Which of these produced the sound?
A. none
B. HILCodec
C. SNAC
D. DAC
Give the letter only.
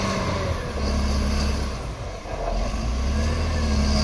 A